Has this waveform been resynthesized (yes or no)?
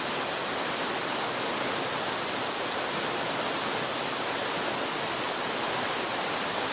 no